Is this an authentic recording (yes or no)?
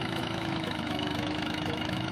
no